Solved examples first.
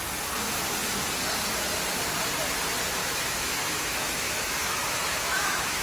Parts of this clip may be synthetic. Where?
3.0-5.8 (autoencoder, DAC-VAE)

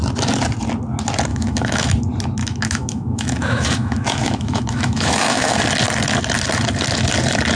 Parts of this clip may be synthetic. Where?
1.3-1.9 (autoencoder, DAC-VAE); 2.4-5.6